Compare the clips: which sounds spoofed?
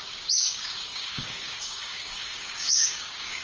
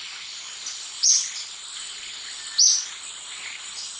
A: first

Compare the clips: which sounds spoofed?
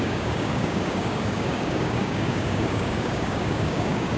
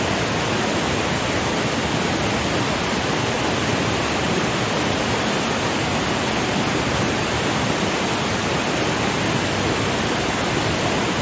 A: first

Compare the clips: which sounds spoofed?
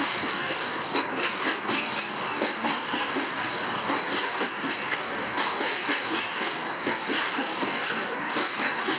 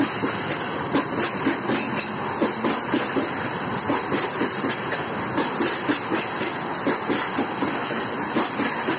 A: first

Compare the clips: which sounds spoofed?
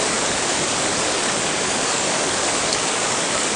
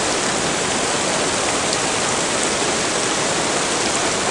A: first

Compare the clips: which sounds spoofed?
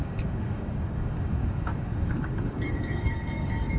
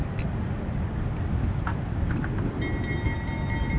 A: first